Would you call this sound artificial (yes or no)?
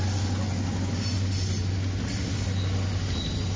no